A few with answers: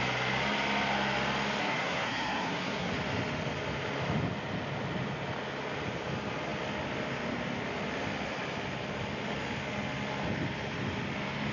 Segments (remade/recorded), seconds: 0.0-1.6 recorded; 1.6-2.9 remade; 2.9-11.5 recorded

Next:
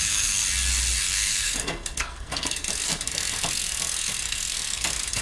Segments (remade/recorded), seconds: 0.0-0.4 remade; 0.4-1.0 recorded; 1.0-5.2 remade

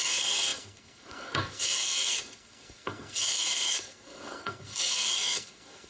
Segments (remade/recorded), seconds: 0.0-5.9 remade

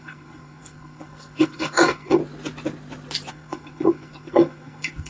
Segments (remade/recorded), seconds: 0.0-2.2 remade; 2.2-3.3 recorded; 3.3-5.1 remade

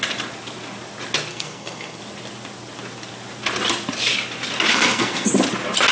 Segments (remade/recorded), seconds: 0.0-1.3 recorded; 1.3-2.0 remade; 2.0-4.7 recorded; 4.7-5.3 remade; 5.3-5.9 recorded

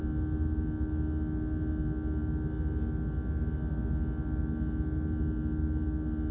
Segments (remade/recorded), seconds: 0.0-6.3 recorded

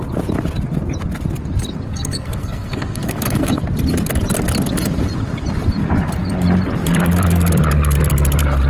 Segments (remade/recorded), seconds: 0.0-1.9 recorded; 1.9-3.6 remade; 3.6-8.7 recorded